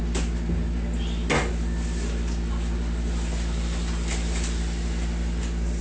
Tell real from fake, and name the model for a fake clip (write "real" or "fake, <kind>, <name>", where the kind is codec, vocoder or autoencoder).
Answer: real